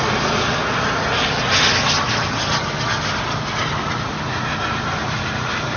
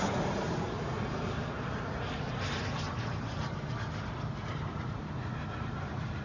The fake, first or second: second